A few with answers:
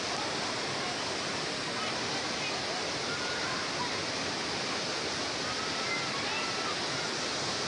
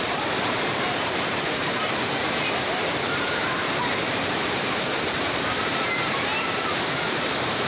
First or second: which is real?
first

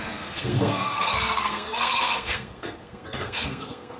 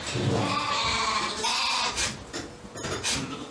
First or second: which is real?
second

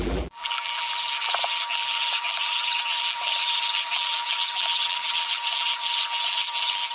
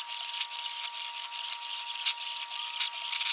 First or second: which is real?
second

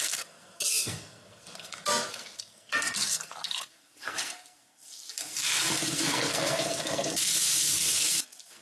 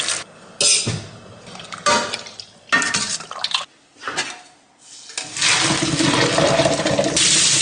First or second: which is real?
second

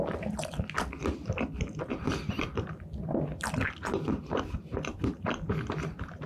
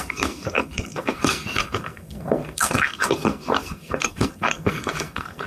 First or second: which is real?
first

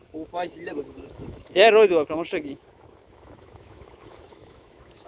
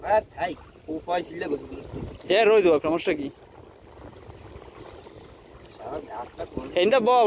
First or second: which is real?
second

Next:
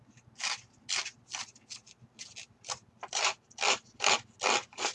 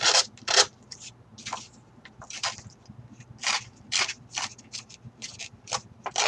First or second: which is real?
first